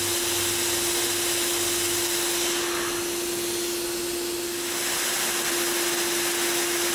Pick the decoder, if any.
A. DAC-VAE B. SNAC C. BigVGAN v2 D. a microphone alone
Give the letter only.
D